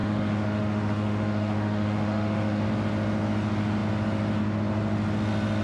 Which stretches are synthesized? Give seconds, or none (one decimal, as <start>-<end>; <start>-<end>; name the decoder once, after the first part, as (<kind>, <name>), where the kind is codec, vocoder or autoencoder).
0.0-2.6 (autoencoder, DAC-VAE)